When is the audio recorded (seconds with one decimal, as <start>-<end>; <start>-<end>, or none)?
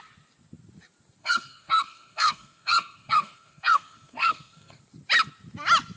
0.0-1.2; 4.8-6.0